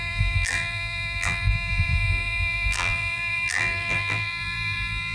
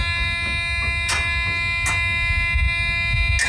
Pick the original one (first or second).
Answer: second